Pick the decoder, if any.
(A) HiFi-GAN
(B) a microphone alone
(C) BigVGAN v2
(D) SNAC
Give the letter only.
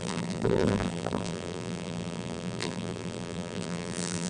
C